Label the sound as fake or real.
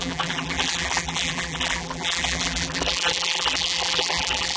fake